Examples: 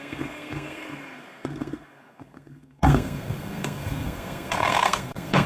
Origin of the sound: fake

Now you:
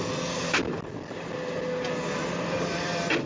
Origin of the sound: real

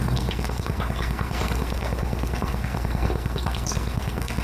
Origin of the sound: fake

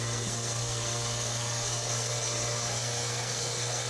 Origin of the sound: fake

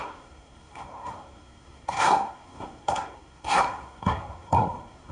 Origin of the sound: fake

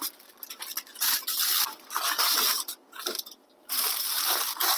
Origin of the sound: real